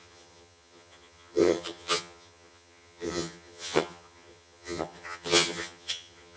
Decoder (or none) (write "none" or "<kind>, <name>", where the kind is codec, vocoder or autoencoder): vocoder, HiFi-GAN